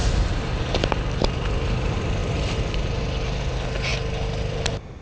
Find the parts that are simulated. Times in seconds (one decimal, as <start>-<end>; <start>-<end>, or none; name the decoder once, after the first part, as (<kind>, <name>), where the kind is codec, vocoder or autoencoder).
2.2-3.0 (vocoder, BigVGAN v2)